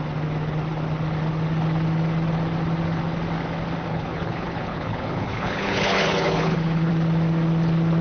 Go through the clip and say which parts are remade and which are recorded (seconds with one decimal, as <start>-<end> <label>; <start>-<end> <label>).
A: 0.0-3.9 recorded; 3.9-6.9 remade; 6.9-8.0 recorded